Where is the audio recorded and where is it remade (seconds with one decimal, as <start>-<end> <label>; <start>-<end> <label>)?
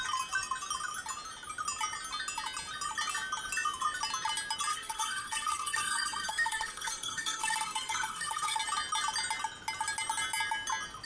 0.0-4.7 recorded; 4.7-8.6 remade; 8.6-11.0 recorded